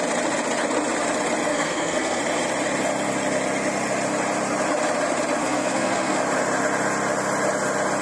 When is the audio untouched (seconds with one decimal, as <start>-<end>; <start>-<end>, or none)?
0.0-1.5; 2.2-5.4; 6.2-8.0